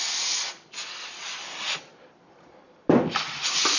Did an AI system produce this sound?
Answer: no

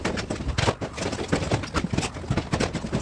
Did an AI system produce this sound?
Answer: no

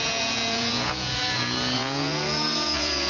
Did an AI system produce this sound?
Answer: yes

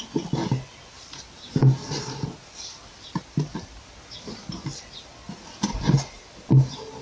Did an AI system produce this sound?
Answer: no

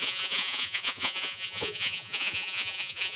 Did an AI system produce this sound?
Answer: yes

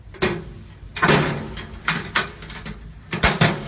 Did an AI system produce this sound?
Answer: no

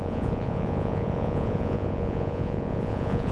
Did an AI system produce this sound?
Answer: yes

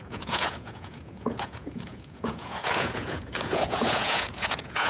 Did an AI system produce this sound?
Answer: yes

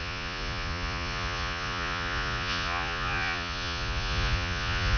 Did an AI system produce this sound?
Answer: yes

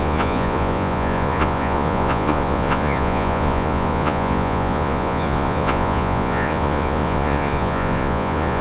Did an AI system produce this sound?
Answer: yes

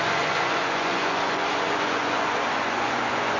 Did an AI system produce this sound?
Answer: yes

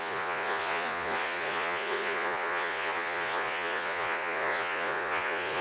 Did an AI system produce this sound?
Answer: yes